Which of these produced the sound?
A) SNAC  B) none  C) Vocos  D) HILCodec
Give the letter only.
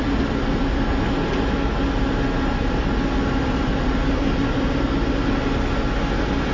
B